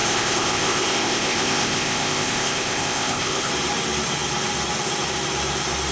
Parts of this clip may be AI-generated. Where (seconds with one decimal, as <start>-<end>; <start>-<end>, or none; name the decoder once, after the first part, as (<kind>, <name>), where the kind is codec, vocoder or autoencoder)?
0.0-3.5 (codec, ZipCodec)